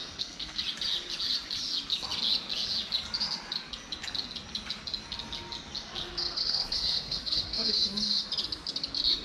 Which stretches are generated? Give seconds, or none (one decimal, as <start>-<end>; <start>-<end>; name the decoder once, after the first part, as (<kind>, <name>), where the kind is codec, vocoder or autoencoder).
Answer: 0.0-0.6 (codec, SNAC); 6.0-7.7